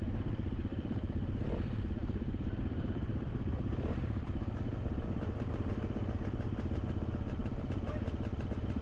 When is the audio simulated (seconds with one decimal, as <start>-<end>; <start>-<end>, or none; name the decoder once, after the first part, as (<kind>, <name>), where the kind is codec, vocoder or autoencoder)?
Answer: 0.7-5.7 (vocoder, BigVGAN v2); 7.4-8.8